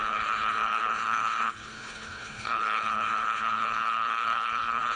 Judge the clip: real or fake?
fake